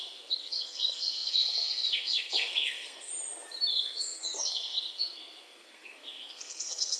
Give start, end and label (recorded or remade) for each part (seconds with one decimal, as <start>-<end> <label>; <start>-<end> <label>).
0.0-3.1 remade; 3.1-3.7 recorded; 3.7-7.0 remade

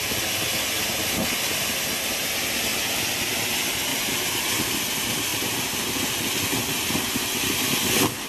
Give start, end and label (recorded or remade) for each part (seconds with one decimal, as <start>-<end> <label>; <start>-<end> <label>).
0.0-3.9 recorded; 3.9-4.5 remade; 4.5-5.3 recorded; 5.3-6.1 remade; 6.1-8.3 recorded

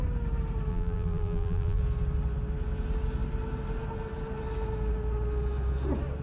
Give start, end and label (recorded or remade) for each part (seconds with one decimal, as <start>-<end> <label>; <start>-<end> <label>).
0.0-0.7 recorded; 0.7-1.8 remade; 1.8-6.2 recorded